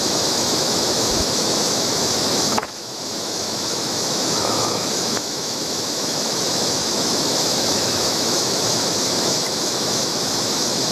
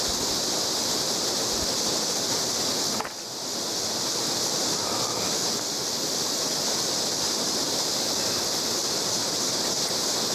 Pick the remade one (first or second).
first